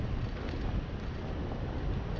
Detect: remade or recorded recorded